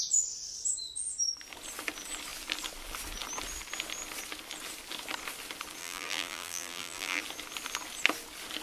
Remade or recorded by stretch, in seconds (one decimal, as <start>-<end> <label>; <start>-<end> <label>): 0.0-5.8 recorded; 5.8-7.2 remade; 7.2-8.6 recorded